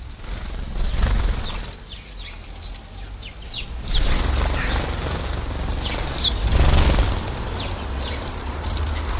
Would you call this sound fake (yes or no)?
no